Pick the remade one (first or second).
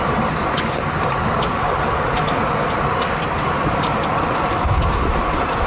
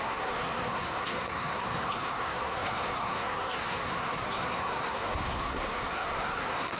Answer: second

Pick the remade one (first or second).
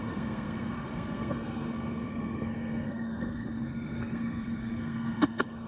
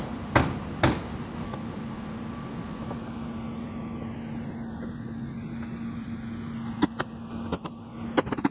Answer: first